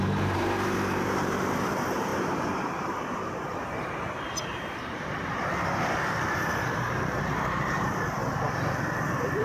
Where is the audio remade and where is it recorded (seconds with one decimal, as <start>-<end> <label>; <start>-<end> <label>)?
0.0-8.2 remade; 8.2-8.7 recorded; 8.7-9.4 remade